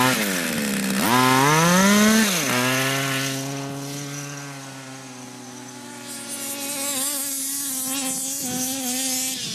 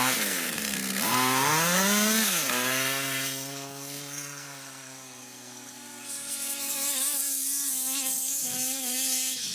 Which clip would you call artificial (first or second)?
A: second